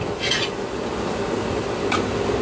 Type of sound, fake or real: real